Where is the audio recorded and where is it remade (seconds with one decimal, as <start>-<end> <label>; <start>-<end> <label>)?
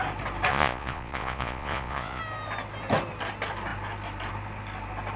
0.0-0.5 recorded; 0.5-2.2 remade; 2.2-5.2 recorded